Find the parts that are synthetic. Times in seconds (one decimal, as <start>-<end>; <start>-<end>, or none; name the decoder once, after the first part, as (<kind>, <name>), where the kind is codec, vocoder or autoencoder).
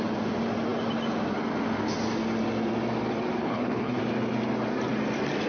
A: 3.4-4.0 (codec, HILCodec)